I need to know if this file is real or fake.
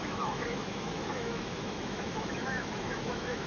fake